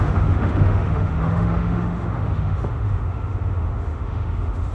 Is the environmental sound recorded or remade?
remade